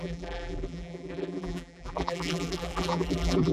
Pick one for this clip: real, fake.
fake